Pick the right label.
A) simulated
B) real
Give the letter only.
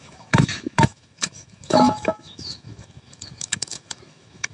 A